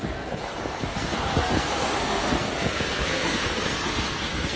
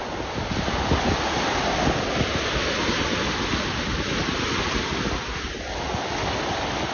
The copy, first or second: first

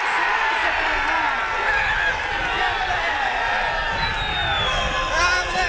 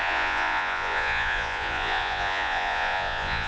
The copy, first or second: second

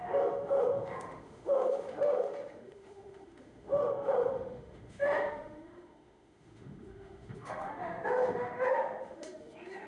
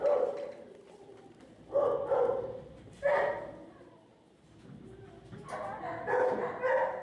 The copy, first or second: first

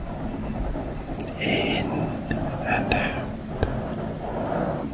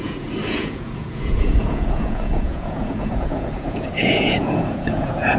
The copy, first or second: second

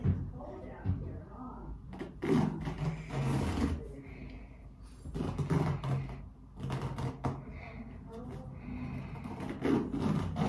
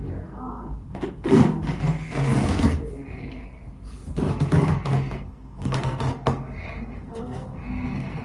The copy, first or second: second